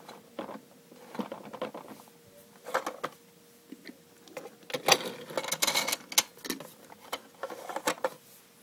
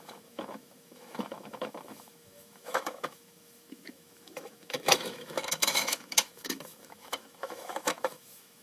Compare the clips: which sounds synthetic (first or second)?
second